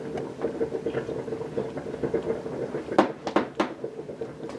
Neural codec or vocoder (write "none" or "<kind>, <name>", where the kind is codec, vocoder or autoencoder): none